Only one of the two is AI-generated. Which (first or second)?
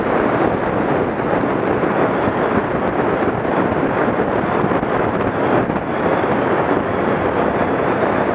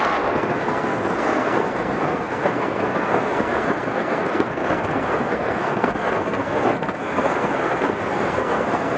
second